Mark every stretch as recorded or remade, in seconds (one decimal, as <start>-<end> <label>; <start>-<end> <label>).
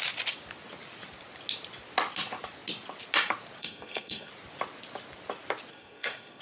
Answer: 0.0-3.6 recorded; 3.6-4.3 remade; 4.3-5.7 recorded; 5.7-6.4 remade